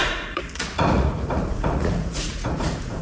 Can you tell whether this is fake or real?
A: fake